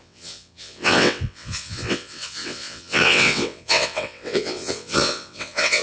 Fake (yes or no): yes